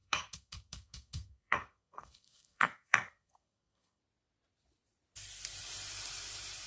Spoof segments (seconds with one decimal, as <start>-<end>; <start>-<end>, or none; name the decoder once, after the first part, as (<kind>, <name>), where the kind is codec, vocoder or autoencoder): 0.0-4.0 (codec, SNAC)